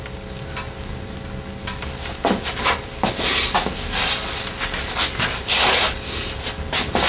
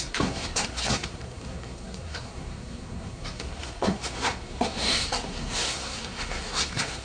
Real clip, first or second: first